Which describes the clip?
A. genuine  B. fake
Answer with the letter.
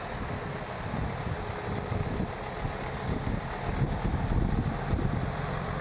A